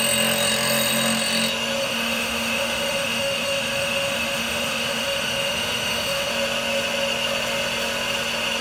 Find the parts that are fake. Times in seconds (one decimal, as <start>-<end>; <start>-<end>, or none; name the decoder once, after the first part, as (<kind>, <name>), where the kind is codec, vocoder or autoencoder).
1.8-6.3 (autoencoder, DAC-VAE)